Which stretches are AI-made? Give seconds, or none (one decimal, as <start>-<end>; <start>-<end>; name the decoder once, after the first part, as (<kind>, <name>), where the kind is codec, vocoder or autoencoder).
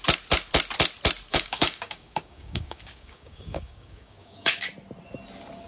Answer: 1.3-4.6 (codec, DAC)